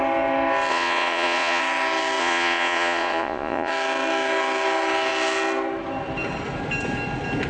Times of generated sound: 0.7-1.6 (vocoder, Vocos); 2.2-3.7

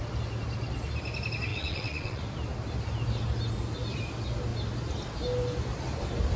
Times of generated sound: 1.5-2.2 (vocoder, WaveNeXt)

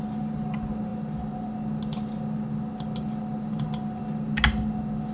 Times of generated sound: none

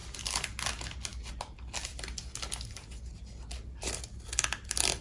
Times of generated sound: none

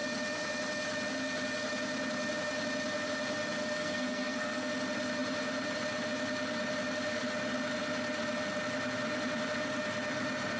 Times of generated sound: 3.6-4.7 (codec, SNAC)